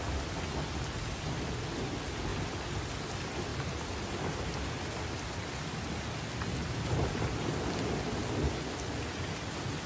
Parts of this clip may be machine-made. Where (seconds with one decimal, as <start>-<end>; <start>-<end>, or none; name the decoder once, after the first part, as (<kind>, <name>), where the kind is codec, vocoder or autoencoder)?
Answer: none